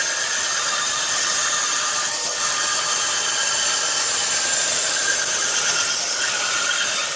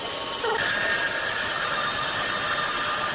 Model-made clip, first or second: first